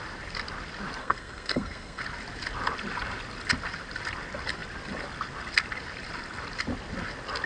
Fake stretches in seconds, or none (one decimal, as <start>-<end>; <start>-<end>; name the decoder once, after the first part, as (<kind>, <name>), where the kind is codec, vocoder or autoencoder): 1.0-2.0 (codec, SNAC)